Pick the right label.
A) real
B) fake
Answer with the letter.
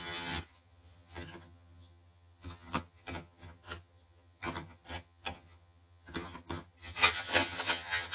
B